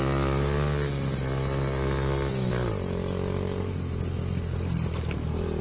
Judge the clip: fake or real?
real